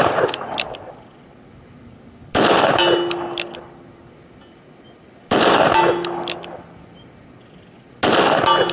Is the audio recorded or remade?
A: recorded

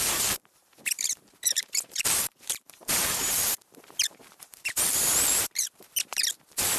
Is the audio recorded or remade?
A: remade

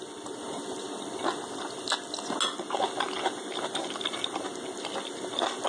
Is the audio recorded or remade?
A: recorded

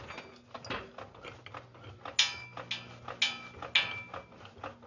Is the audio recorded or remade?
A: recorded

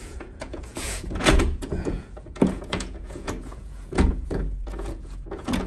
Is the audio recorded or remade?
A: remade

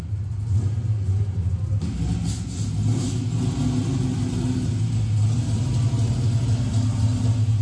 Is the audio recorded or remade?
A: recorded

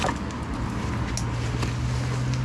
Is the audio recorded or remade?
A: recorded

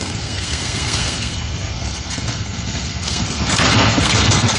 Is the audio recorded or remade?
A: remade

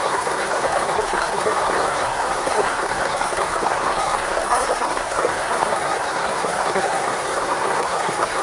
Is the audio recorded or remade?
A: remade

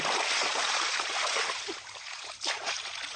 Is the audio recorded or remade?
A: recorded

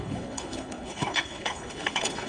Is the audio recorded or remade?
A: remade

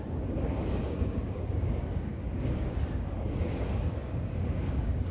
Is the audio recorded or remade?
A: remade